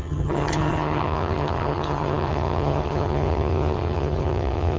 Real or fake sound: fake